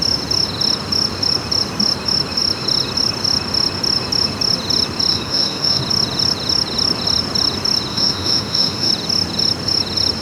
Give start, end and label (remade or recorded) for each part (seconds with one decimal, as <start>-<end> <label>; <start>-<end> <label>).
0.0-5.1 recorded; 5.1-5.8 remade; 5.8-7.9 recorded; 7.9-8.9 remade; 8.9-10.2 recorded